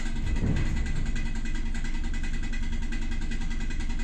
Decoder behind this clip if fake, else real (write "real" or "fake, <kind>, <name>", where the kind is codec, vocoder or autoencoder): real